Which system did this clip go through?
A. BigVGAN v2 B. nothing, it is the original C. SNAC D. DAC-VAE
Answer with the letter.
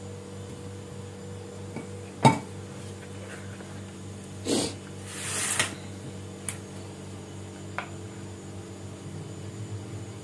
B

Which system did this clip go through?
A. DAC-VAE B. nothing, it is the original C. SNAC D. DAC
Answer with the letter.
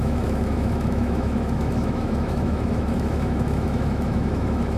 A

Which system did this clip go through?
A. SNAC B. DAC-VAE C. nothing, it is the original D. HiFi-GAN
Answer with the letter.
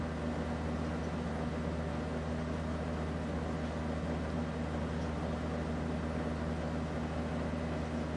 C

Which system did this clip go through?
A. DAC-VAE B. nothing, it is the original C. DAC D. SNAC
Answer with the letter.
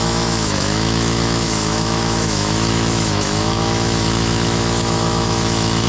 A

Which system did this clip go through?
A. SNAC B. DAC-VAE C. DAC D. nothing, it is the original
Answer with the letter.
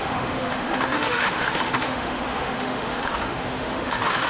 B